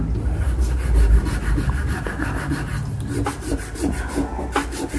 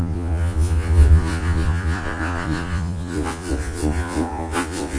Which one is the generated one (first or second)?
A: second